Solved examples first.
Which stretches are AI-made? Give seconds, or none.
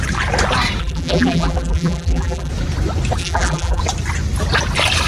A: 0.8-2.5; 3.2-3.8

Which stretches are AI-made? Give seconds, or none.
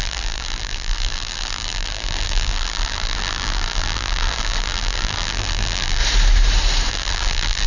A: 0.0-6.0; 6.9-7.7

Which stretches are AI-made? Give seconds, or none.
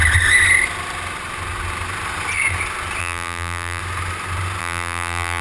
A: 3.0-3.8; 4.6-5.4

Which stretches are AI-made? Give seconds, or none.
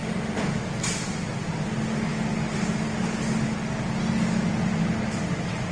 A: 0.0-0.7; 2.1-4.5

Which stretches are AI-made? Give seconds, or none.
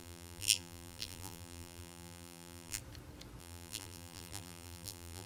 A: 0.0-2.8; 3.4-5.3